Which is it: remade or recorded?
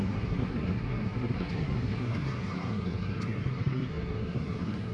remade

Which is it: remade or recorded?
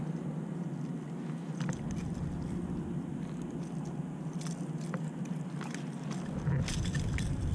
recorded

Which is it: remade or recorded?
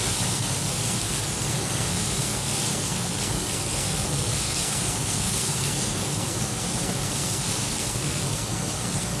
remade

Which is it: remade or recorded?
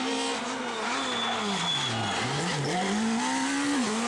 recorded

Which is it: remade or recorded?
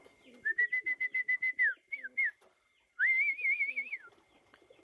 recorded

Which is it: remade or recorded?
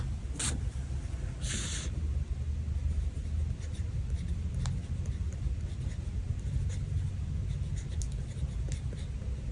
recorded